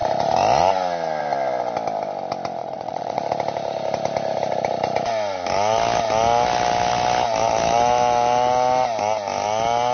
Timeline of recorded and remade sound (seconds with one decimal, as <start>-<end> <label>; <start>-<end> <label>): 0.0-2.6 recorded; 2.6-3.2 remade; 3.2-9.9 recorded